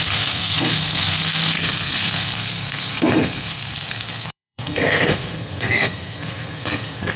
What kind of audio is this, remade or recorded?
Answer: remade